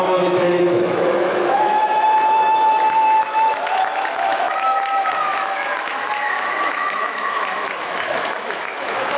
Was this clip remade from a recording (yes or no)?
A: yes